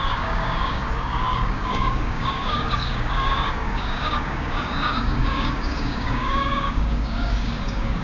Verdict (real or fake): fake